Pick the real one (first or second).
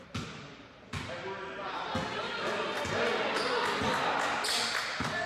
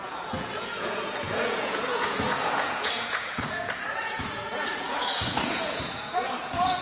first